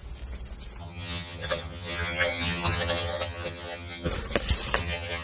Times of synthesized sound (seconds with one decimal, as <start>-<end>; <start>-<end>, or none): 0.8-4.1; 4.8-5.2